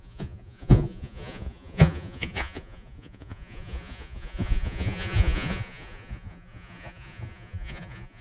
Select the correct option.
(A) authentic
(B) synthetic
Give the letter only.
B